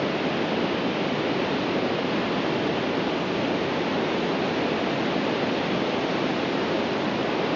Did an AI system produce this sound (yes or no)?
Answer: no